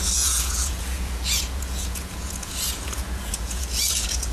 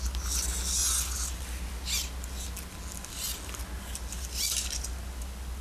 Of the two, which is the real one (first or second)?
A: second